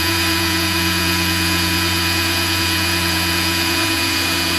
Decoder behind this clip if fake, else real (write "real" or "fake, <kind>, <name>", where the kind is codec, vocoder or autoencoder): fake, vocoder, Vocos